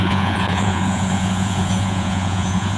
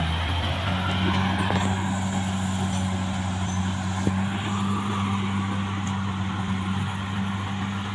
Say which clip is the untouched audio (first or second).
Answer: second